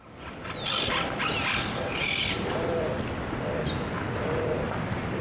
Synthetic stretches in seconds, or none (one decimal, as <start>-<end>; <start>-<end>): none